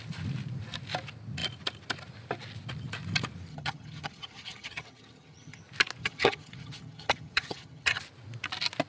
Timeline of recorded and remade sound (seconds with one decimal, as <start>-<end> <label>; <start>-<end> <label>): 0.0-3.5 recorded; 3.5-5.6 remade; 5.6-6.0 recorded; 6.0-8.0 remade; 8.0-8.9 recorded